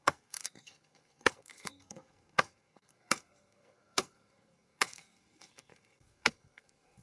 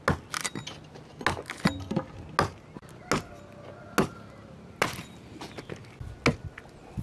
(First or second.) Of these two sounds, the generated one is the first